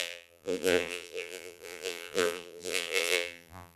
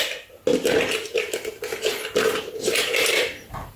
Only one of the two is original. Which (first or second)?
second